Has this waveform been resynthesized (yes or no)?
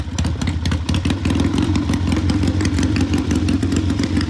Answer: yes